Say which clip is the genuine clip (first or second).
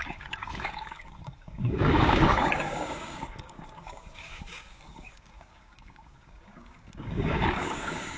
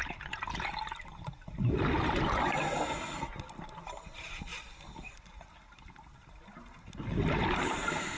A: second